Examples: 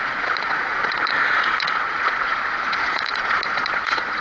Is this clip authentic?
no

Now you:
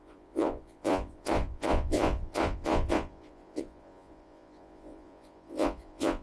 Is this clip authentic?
no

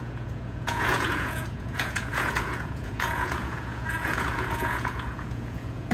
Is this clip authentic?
no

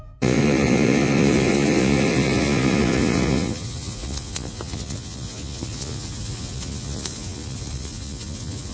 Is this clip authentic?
no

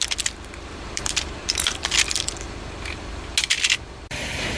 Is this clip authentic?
yes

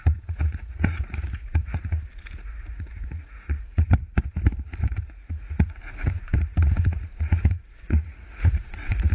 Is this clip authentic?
no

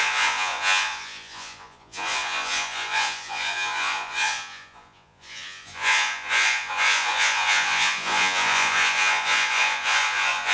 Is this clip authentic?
no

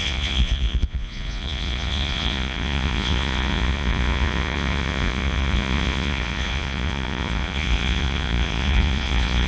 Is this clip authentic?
no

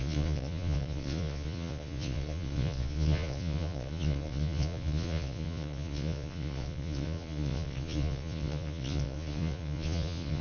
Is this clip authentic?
no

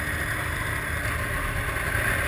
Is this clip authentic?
yes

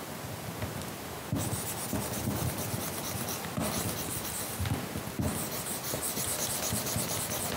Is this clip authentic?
yes